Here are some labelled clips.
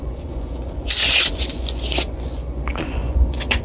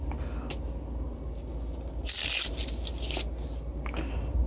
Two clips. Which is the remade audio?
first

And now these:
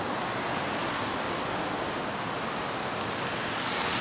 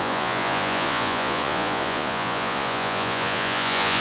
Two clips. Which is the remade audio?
second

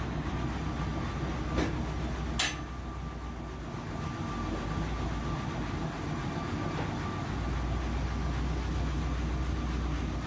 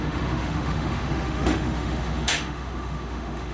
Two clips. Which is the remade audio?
second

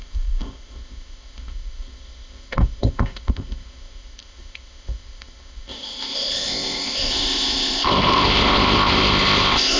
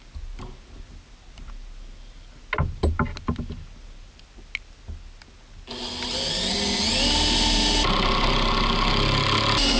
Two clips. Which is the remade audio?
first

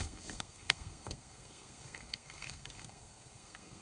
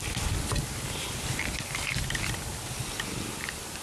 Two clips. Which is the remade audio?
first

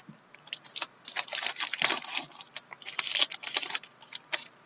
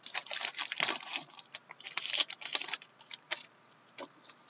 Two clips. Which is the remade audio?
second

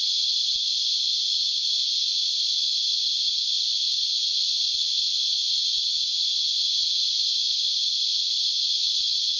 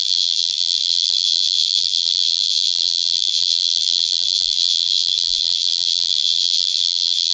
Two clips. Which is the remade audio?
second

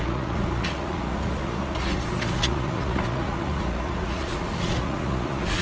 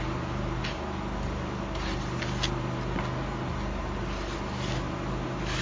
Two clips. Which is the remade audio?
first